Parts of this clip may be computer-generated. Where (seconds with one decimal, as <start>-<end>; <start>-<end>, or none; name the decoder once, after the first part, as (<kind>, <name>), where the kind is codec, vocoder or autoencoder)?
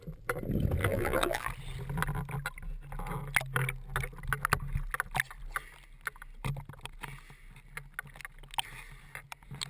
0.8-1.5 (vocoder, BigVGAN v2)